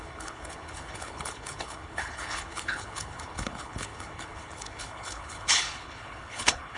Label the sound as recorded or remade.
remade